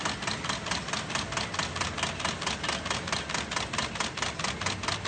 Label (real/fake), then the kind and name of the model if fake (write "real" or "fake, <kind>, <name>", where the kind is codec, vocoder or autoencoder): real